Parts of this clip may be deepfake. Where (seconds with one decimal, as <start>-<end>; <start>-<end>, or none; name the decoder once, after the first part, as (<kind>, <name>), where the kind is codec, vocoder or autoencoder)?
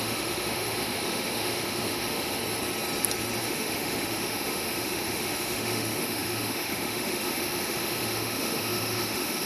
0.0-2.4 (autoencoder, DAC-VAE); 3.4-9.5